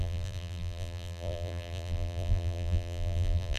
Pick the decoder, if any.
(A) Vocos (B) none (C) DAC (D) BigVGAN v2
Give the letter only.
D